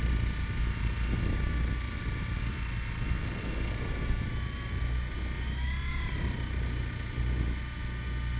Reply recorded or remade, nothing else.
recorded